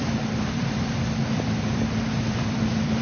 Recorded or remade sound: remade